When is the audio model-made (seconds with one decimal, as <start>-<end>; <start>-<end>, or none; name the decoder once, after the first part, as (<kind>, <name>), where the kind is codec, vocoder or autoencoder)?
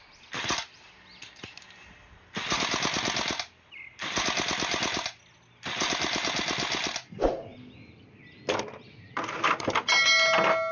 none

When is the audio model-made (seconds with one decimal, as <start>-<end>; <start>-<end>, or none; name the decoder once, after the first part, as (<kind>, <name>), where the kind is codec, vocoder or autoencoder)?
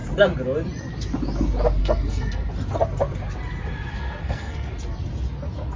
1.8-2.5 (codec, SNAC); 3.9-4.7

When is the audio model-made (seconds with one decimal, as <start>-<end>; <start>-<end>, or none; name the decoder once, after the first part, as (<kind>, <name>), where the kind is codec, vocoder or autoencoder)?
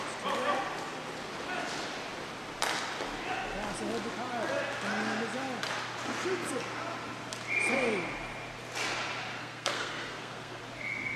9.4-10.6 (codec, SNAC)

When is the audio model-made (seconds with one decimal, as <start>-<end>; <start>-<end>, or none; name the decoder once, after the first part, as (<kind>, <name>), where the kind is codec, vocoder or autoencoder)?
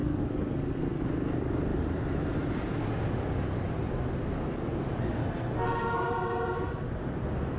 0.0-1.0 (codec, SNAC); 5.2-6.1